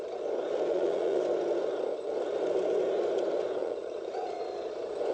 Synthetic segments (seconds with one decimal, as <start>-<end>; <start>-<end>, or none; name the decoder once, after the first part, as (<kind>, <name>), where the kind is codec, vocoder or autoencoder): 0.7-1.2 (vocoder, Vocos); 3.6-4.4